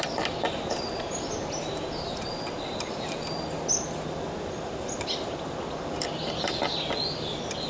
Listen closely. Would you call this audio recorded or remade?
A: recorded